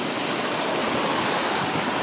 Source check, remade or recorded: recorded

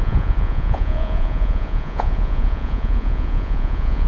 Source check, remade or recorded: remade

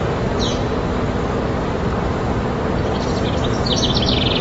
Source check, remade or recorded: recorded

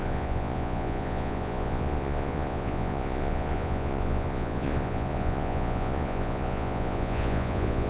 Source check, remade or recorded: remade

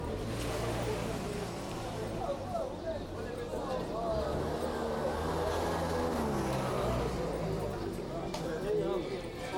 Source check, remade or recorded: recorded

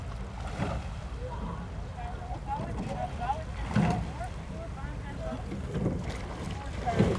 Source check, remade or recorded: recorded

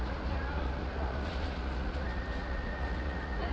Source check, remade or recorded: remade